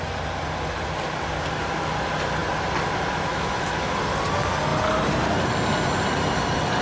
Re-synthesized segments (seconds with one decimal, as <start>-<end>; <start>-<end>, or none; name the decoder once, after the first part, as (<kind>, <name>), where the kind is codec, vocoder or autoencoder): 3.3-4.0 (autoencoder, DAC-VAE)